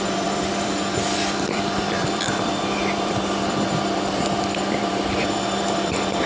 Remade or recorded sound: remade